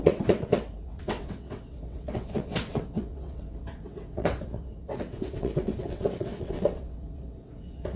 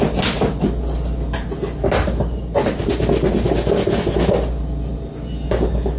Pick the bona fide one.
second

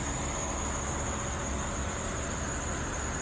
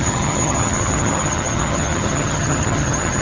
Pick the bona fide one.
first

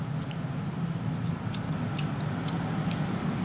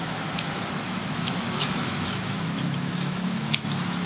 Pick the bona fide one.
first